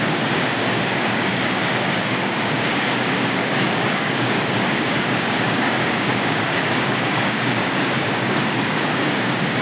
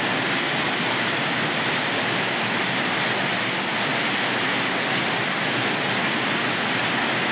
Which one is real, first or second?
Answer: second